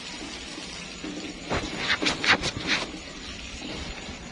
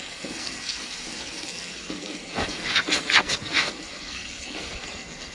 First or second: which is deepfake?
second